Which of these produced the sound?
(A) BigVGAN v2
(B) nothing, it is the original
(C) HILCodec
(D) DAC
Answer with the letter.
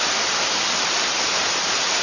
B